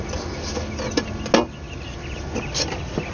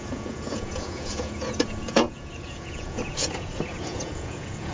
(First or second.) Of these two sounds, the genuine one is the first